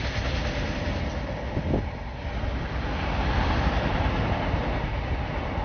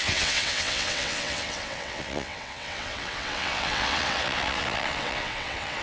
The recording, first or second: first